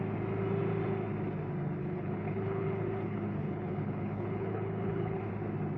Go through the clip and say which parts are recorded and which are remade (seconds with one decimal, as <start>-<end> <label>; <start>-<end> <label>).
0.0-1.8 recorded; 1.8-5.3 remade; 5.3-5.8 recorded